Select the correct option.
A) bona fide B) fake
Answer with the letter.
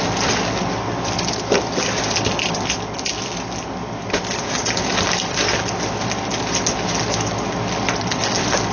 A